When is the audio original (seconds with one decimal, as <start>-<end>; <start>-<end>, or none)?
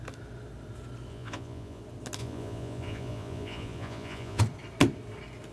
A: 0.0-1.1; 1.8-2.2; 4.4-5.5